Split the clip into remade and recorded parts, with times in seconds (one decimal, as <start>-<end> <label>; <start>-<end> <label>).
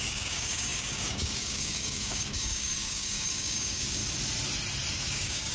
0.0-4.0 remade; 4.0-4.9 recorded; 4.9-5.5 remade